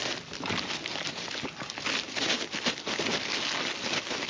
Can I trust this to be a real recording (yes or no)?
yes